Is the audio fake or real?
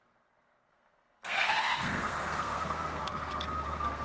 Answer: fake